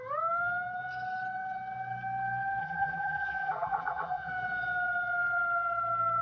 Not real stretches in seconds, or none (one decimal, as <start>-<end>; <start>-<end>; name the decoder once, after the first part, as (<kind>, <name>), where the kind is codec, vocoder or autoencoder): 2.6-4.3 (vocoder, BigVGAN v2)

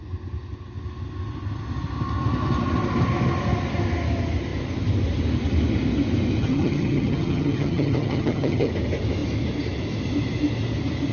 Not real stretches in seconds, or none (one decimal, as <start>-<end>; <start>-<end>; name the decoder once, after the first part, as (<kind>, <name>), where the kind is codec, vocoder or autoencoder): 6.4-8.7 (vocoder, HiFi-GAN)